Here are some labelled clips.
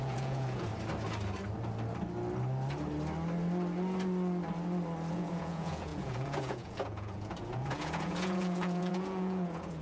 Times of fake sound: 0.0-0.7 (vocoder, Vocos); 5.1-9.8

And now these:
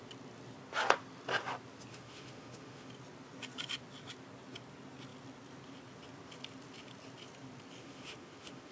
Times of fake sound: 1.9-2.9 (autoencoder, DAC-VAE); 7.8-8.7

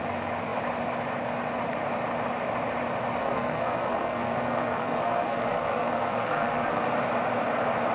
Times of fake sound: 3.2-6.8 (codec, SNAC)

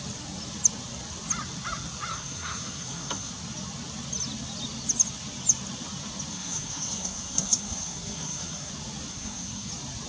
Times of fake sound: 2.1-3.3 (codec, SNAC); 6.3-8.7; 9.1-9.7

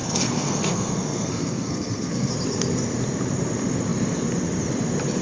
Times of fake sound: 0.0-2.3 (codec, SNAC)

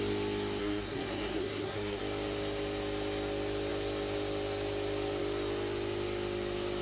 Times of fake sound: 0.6-2.0 (codec, SNAC)